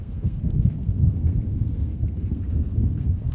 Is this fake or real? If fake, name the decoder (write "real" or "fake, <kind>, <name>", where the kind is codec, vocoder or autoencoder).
fake, codec, SNAC